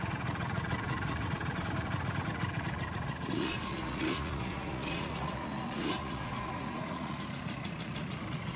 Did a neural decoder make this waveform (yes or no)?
yes